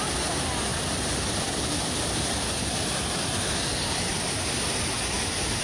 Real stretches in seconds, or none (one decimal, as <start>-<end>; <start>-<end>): 3.3-4.1